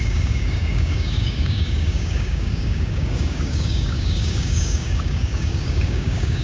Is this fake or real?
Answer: fake